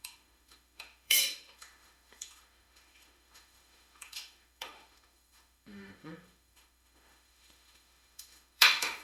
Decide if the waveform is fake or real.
fake